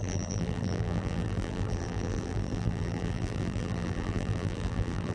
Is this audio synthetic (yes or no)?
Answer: yes